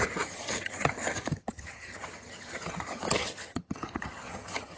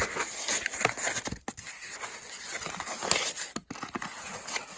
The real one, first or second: second